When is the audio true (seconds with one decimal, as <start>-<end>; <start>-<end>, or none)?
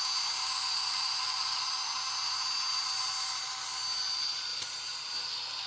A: 0.0-4.5; 5.0-5.7